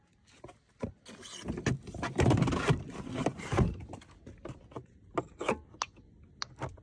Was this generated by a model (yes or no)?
no